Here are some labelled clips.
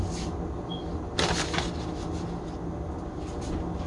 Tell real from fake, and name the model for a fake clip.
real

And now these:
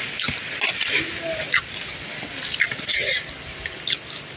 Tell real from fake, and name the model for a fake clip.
real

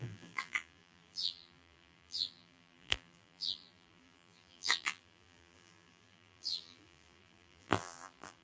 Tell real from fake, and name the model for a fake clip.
fake, vocoder, BigVGAN v2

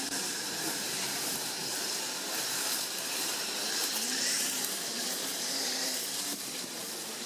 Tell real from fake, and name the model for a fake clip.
fake, vocoder, BigVGAN v2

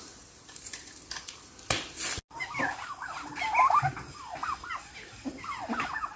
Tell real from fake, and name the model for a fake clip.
real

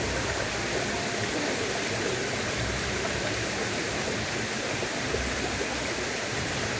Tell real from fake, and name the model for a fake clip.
fake, vocoder, BigVGAN v2